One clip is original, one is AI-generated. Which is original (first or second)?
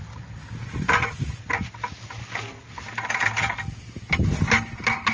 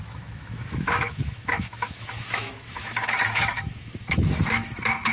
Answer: first